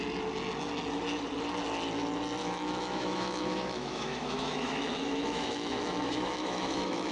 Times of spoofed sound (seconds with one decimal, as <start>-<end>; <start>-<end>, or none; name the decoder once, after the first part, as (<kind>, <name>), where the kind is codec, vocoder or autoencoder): 2.4-7.1 (autoencoder, DAC-VAE)